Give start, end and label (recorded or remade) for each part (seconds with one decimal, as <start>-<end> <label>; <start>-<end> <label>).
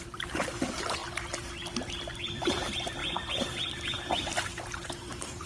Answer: 0.0-1.0 remade; 1.0-2.4 recorded; 2.4-5.5 remade